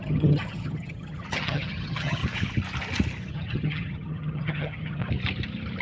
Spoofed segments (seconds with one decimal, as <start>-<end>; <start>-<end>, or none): 0.0-2.2; 3.3-5.0